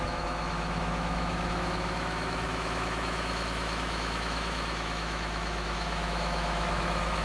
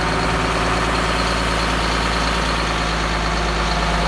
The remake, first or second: first